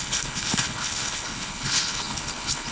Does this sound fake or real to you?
fake